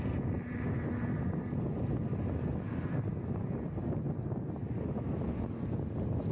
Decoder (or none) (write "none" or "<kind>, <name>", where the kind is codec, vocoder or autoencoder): none